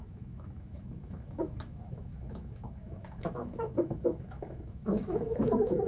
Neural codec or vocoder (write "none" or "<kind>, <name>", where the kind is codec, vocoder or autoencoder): autoencoder, DAC-VAE